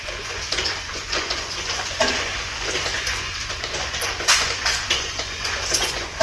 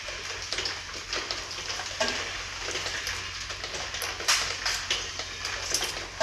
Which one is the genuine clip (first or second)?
second